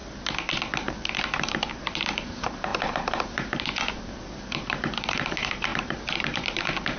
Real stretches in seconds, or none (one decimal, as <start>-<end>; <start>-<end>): 0.0-1.2

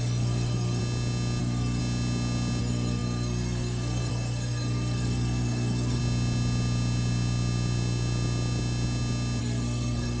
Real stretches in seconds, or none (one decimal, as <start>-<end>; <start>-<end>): 0.8-1.4; 1.8-2.6; 6.0-9.4

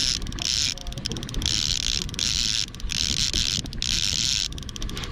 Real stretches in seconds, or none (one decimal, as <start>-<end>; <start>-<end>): 0.0-5.1

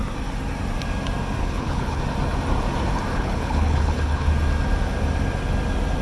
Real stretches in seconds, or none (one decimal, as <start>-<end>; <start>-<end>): 0.0-1.4; 2.0-3.1; 4.3-6.0

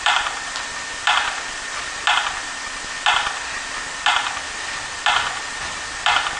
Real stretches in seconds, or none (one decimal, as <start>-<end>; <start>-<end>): 0.0-6.4

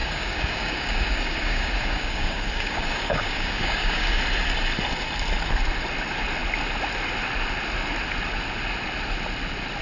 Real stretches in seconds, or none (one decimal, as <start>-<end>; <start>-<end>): 4.2-9.8